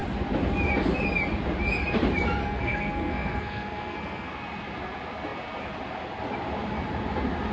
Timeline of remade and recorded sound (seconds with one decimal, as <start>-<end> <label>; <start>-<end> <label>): 0.0-2.4 recorded; 2.4-4.3 remade; 4.3-7.5 recorded